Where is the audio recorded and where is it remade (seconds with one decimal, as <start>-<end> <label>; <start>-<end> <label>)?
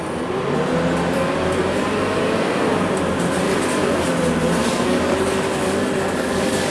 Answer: 0.0-4.6 recorded; 4.6-6.7 remade